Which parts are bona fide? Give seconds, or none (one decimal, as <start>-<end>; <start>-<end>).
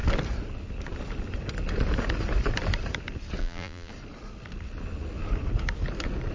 0.0-3.4; 3.9-6.3